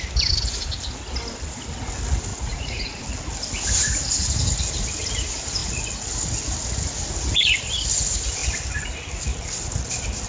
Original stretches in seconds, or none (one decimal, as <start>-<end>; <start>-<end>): 0.0-2.3; 3.0-10.3